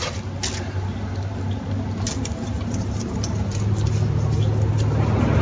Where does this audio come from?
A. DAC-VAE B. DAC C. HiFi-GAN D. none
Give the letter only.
D